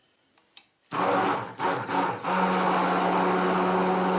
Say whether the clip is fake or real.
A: real